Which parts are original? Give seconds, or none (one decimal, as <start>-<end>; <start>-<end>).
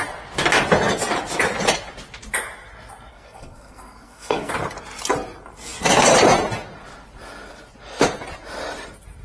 0.0-3.1; 4.5-9.2